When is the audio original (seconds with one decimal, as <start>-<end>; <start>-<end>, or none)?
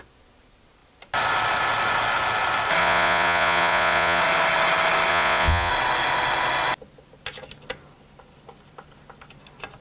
0.0-2.8; 4.2-5.1; 5.7-9.8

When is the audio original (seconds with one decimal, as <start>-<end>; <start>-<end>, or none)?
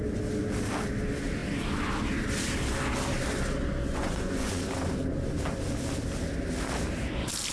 0.0-3.9; 4.6-7.5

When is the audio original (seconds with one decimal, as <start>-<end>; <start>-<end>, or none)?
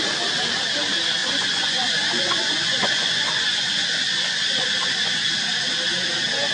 0.0-1.2; 5.1-6.5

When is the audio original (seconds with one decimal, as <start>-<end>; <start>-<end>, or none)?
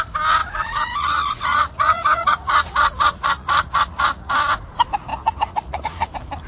0.0-0.4; 4.3-5.1; 6.1-6.5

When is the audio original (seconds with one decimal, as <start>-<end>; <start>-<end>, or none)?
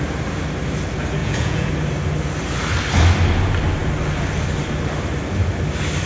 0.0-1.2; 1.7-6.1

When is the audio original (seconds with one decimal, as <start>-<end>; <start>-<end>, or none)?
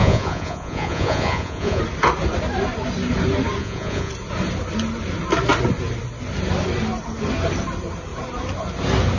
1.8-3.6; 4.1-9.2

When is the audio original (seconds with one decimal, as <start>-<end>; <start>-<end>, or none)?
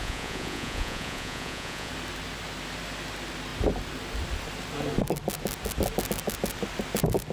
1.9-7.3